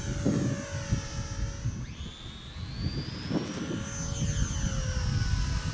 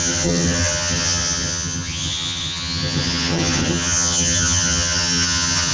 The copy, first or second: second